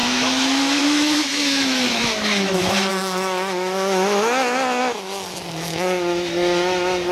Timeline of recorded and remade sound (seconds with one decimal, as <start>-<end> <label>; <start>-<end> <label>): 0.0-7.1 remade